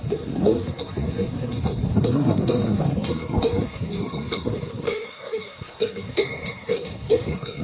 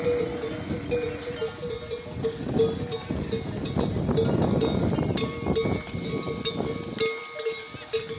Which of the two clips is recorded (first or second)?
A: second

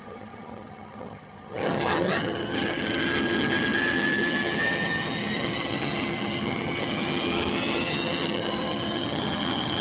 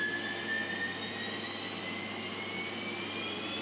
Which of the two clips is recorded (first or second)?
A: second